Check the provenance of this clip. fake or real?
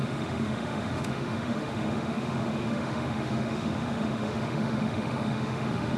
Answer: fake